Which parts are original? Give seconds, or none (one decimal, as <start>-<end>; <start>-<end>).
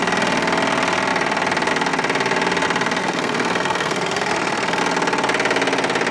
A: 0.0-3.0; 4.8-6.1